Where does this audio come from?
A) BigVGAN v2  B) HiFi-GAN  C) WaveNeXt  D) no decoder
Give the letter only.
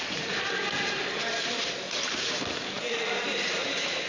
A